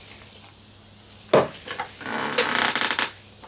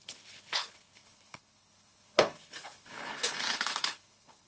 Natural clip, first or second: first